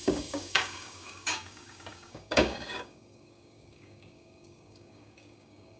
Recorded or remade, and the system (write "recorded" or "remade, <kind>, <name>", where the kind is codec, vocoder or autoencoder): remade, codec, DAC